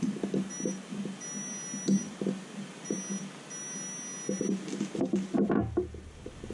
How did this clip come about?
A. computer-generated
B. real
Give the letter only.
B